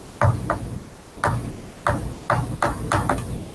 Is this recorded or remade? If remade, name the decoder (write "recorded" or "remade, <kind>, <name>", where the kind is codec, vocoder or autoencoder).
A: recorded